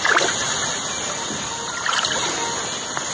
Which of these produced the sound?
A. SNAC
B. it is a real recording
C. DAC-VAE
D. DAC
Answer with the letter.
B